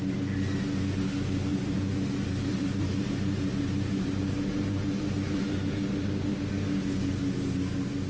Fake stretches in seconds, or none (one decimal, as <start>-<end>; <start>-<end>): 1.5-6.4